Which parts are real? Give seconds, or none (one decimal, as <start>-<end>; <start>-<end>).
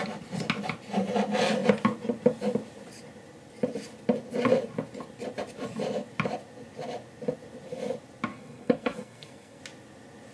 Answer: 0.0-8.3; 9.6-10.3